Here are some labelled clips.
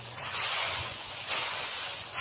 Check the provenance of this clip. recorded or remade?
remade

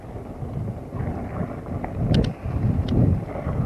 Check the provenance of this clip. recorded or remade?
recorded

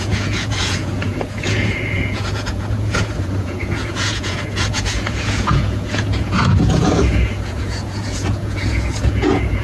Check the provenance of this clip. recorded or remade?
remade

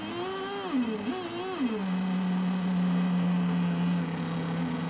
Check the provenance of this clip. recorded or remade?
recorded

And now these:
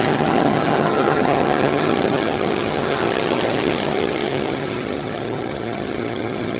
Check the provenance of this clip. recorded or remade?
remade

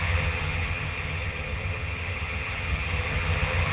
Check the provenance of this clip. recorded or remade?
remade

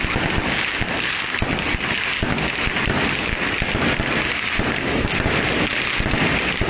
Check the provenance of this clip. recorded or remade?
recorded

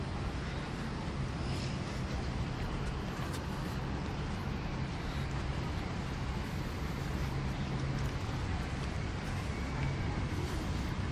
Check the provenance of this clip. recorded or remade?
recorded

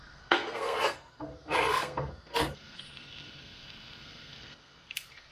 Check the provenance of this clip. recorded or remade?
remade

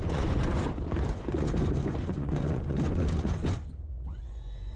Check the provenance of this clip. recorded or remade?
remade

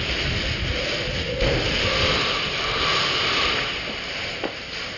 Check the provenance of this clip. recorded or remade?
recorded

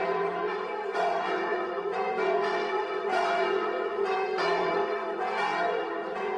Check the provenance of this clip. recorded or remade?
remade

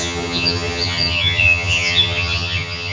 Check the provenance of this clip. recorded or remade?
remade